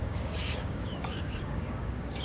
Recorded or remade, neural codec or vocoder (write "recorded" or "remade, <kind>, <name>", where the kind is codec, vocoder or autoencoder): remade, codec, DAC